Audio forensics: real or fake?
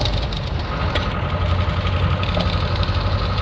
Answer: real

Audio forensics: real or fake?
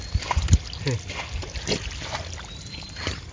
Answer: real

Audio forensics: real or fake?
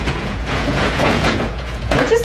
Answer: fake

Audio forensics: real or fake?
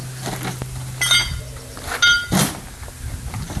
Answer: real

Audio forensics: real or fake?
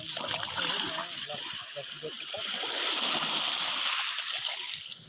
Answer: real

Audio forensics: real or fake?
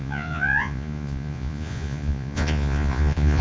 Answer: fake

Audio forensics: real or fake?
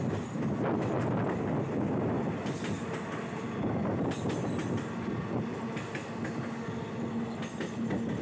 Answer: real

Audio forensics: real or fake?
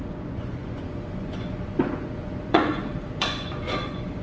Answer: fake